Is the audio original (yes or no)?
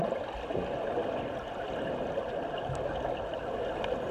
yes